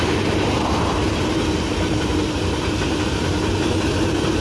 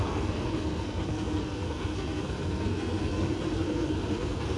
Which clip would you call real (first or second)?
first